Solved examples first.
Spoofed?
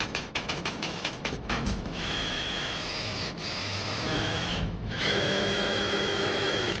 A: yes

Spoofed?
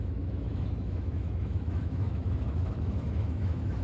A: yes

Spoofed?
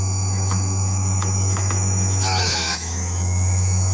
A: yes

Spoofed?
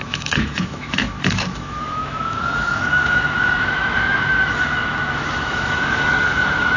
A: yes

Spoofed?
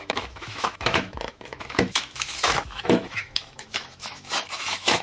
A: yes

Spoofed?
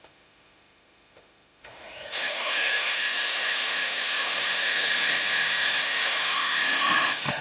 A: yes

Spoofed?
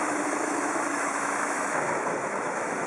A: yes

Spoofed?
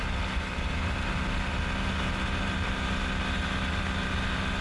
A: no